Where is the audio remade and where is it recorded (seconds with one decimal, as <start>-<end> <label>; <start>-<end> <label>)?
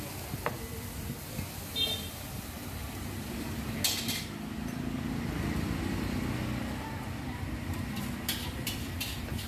0.0-2.8 recorded; 2.8-3.6 remade; 3.6-9.5 recorded